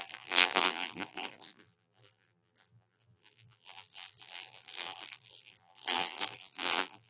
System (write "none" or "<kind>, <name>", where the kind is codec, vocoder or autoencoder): vocoder, BigVGAN v2